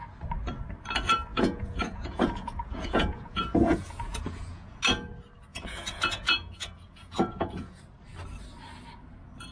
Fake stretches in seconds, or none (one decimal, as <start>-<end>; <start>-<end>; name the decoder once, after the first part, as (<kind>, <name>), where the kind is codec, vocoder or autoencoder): 1.3-4.8 (vocoder, Vocos); 5.5-7.8